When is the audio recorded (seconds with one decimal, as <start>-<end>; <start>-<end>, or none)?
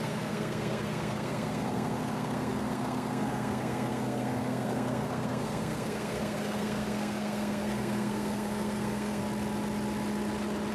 9.2-10.7